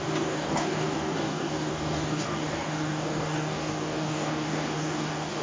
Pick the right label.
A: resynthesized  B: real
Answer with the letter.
A